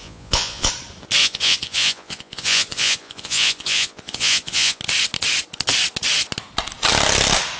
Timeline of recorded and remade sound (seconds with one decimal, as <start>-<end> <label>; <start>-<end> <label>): 0.0-0.7 remade; 0.7-1.2 recorded; 1.2-4.8 remade; 4.8-7.6 recorded